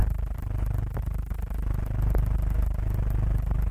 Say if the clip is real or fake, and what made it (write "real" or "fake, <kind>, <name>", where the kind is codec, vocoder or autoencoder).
real